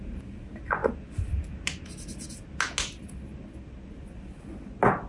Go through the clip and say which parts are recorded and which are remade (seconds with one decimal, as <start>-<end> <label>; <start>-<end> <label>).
0.0-5.1 recorded